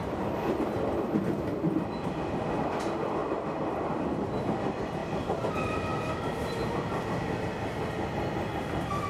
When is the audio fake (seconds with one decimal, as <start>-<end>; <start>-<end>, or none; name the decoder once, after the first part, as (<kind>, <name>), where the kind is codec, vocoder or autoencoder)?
none